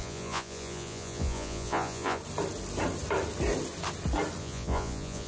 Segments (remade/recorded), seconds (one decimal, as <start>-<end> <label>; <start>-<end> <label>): 0.0-2.2 remade; 2.2-4.4 recorded; 4.4-5.3 remade